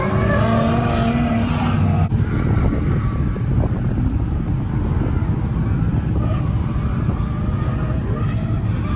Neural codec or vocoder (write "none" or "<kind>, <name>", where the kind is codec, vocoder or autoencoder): none